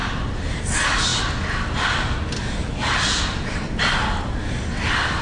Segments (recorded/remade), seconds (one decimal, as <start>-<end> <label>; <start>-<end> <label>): 0.0-5.2 recorded